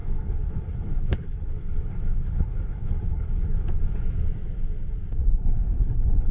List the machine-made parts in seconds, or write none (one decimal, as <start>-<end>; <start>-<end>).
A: 0.0-3.8; 5.2-6.3